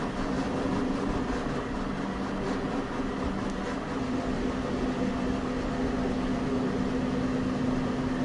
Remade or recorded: recorded